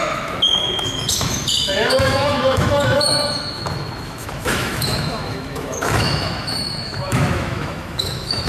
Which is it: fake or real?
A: fake